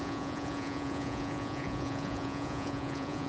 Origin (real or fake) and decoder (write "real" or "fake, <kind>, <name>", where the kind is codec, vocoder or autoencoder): fake, vocoder, Vocos